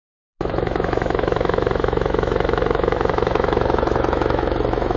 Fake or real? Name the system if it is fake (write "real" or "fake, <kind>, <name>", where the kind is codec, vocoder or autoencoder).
fake, autoencoder, DAC-VAE